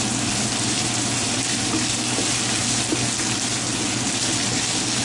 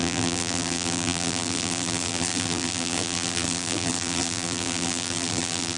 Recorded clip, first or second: first